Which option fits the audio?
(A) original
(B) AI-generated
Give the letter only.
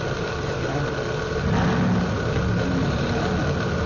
A